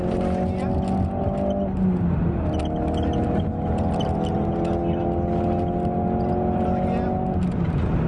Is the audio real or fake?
real